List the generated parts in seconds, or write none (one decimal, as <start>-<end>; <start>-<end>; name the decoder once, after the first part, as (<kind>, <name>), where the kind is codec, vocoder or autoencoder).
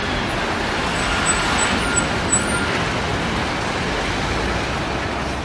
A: none